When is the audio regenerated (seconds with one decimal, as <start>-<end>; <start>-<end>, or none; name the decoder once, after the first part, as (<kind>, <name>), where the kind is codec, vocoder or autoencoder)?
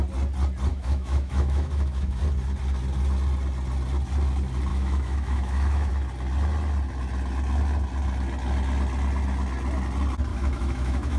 0.7-2.2 (autoencoder, DAC-VAE); 4.7-5.9; 10.3-11.2